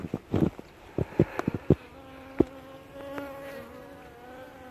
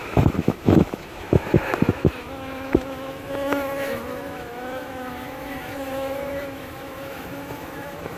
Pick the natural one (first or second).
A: first